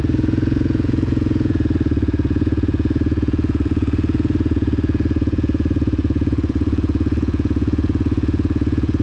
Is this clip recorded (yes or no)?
no